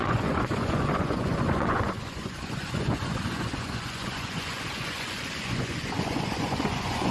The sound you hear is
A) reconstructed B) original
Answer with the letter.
A